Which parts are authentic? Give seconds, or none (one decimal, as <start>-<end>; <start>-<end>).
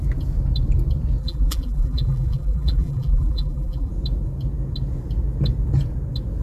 0.0-1.2; 3.9-6.4